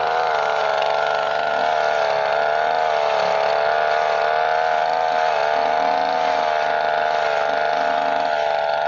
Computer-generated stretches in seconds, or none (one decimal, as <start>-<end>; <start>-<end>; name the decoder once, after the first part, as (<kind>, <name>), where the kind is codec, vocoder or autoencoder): none